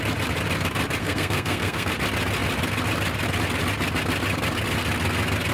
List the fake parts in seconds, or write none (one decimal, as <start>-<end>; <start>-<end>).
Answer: 1.0-1.9